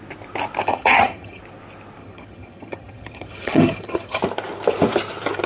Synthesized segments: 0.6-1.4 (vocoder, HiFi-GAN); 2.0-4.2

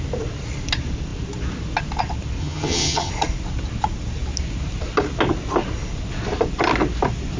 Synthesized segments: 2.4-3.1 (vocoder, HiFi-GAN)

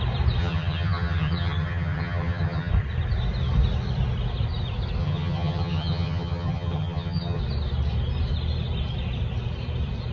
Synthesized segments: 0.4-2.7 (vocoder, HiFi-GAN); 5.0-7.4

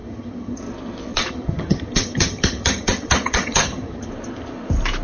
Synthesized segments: 0.0-0.6 (vocoder, HiFi-GAN); 1.1-4.1